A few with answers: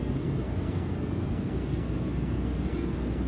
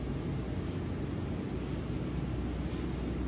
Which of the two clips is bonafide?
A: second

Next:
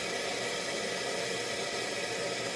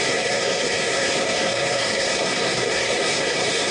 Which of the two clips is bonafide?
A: first